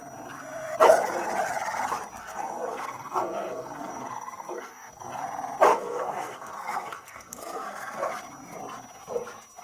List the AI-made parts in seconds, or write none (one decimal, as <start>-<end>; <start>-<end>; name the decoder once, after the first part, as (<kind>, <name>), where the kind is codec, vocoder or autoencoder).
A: 2.2-5.2 (codec, SNAC); 5.7-8.1